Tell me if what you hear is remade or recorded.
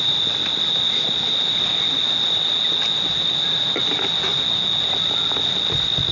recorded